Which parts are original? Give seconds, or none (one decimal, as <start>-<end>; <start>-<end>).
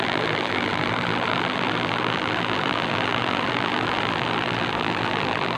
none